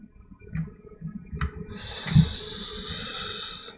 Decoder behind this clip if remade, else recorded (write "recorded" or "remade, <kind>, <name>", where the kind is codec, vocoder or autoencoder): recorded